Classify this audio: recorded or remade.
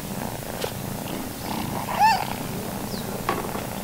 recorded